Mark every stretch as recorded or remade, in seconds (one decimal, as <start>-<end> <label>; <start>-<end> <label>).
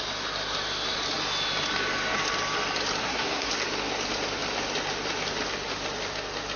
0.0-3.0 recorded; 3.0-3.5 remade; 3.5-6.6 recorded